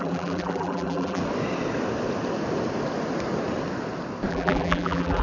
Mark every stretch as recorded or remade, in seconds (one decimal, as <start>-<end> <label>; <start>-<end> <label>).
0.0-1.2 remade; 1.2-4.3 recorded; 4.3-5.2 remade